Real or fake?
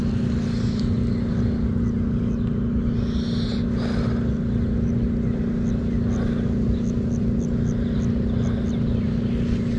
real